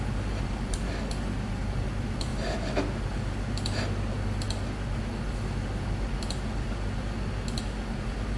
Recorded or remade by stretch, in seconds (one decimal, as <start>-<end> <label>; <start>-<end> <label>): 0.0-2.3 recorded; 2.3-2.8 remade; 2.8-8.4 recorded